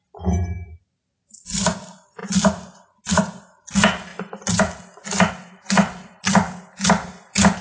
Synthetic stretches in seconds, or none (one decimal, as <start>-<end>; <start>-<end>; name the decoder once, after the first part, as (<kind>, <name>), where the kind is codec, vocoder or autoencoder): none